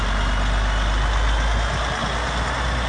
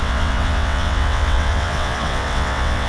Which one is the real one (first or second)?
first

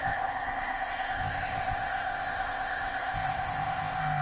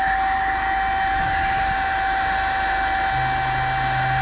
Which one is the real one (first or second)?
second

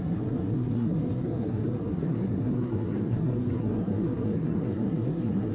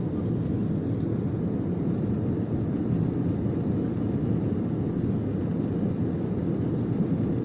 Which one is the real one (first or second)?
second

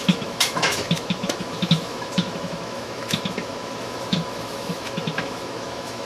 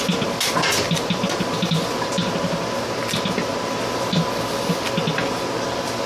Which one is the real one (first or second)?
second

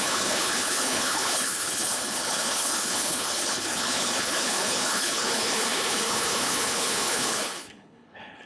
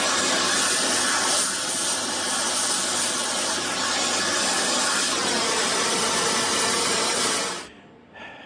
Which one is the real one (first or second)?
second